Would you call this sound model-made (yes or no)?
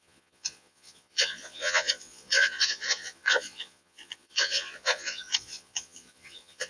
yes